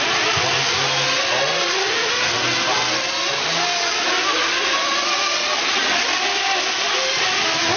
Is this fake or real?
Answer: real